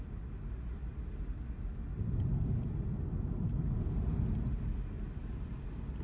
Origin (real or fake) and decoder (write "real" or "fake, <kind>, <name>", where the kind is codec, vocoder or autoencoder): real